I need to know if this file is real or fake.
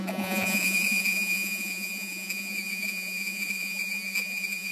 fake